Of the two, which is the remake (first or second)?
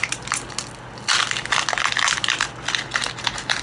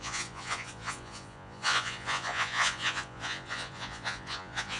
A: second